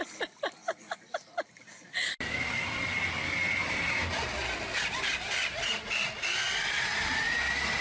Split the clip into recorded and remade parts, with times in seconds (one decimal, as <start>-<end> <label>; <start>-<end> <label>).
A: 0.0-7.8 recorded